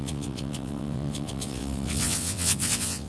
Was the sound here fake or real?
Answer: fake